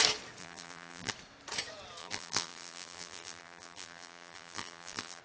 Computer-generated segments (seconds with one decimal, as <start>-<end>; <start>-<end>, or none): 0.4-1.1; 2.0-5.2